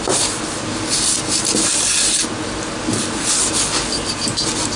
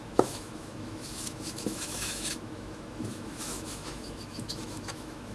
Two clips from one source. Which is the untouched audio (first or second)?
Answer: first